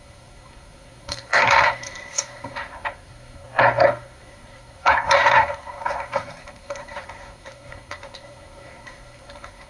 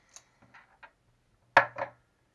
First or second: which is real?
second